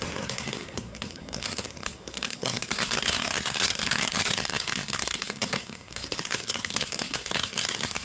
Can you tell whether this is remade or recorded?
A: remade